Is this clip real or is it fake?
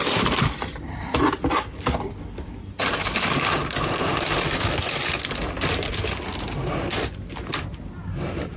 real